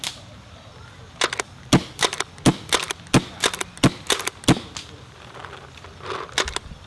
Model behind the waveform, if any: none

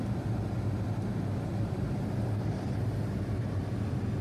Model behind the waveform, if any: none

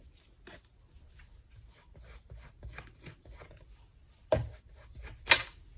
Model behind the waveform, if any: none